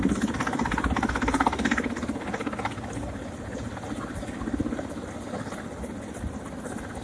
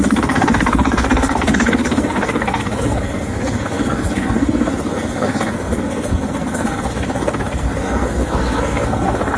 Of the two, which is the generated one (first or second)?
second